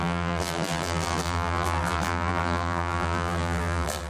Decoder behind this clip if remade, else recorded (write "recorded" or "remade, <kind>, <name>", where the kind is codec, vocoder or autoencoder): remade, vocoder, BigVGAN v2